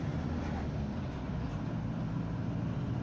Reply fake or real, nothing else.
real